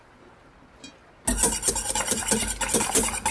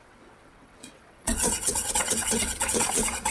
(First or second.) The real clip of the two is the first